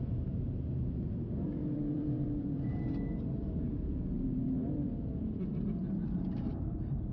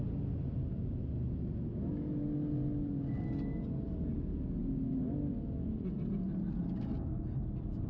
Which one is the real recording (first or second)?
second